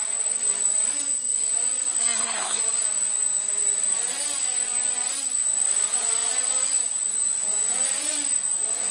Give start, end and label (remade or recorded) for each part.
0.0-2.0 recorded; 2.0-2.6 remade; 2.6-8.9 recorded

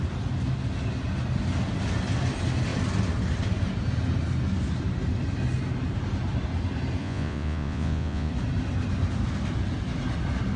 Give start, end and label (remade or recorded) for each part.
0.0-7.0 recorded; 7.0-8.3 remade; 8.3-10.6 recorded

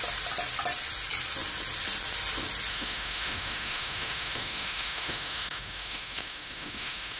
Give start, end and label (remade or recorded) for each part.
0.0-2.7 recorded; 2.7-7.2 remade